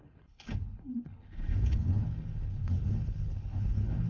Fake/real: fake